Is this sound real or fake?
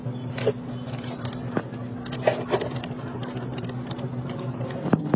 real